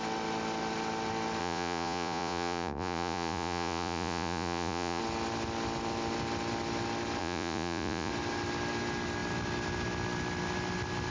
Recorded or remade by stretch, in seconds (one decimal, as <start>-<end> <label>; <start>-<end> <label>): 0.0-1.4 recorded; 1.4-5.0 remade; 5.0-7.2 recorded; 7.2-8.1 remade; 8.1-11.1 recorded